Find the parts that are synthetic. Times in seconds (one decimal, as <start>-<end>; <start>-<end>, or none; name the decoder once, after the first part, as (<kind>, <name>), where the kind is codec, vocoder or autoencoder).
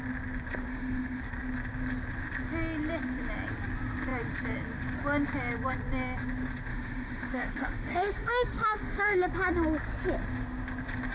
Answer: 0.7-1.2 (autoencoder, DAC-VAE); 6.7-9.3